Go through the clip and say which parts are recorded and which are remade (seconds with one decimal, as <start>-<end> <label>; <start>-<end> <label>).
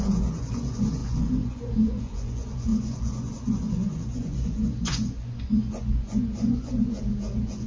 0.0-7.7 remade